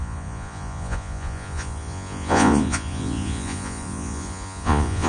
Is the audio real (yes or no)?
no